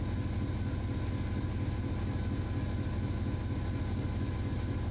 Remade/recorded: recorded